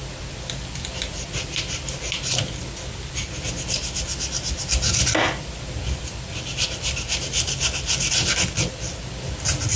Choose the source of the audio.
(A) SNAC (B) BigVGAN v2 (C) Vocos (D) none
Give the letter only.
D